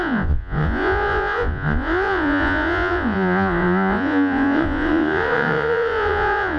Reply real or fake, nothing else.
fake